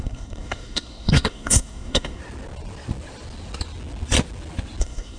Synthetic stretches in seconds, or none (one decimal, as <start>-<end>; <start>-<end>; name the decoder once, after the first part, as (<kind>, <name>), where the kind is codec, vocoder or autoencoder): 0.0-2.2 (codec, SNAC); 4.8-5.2